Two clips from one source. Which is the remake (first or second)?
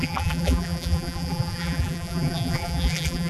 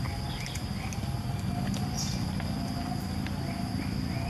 first